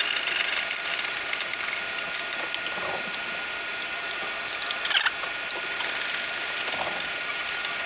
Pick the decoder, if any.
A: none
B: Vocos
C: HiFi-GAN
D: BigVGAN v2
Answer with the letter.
A